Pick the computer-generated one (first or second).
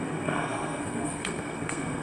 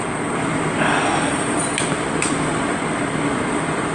first